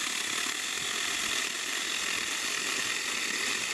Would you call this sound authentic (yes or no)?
yes